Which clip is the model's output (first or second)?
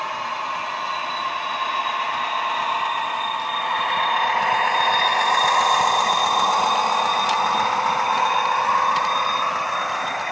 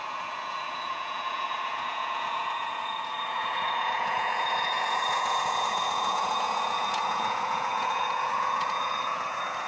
second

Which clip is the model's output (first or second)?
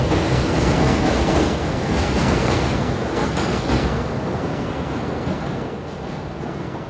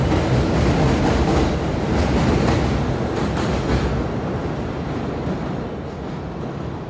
first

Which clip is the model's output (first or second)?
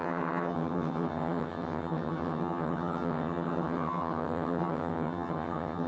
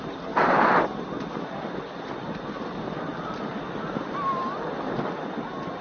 first